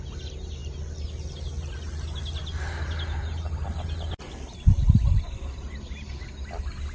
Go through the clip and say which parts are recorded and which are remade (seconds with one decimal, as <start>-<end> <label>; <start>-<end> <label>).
0.0-6.9 recorded